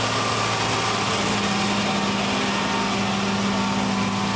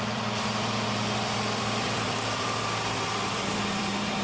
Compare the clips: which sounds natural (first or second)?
first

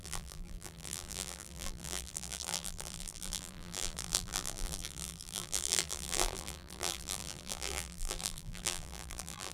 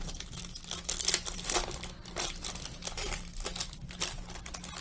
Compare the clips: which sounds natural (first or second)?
second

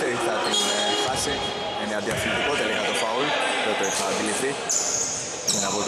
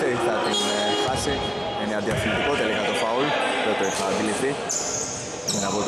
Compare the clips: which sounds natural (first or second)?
second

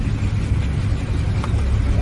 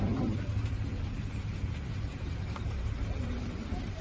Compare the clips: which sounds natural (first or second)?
first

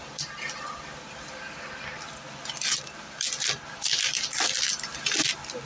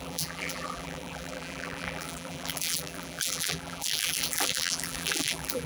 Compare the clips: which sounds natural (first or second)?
first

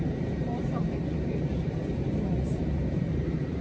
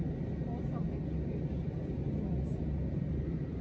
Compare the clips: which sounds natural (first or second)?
second